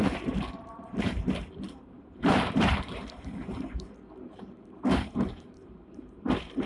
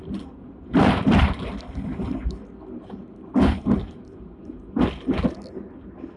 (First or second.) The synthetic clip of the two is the first